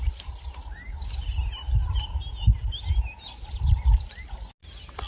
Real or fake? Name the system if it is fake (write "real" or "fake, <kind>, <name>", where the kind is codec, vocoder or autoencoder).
real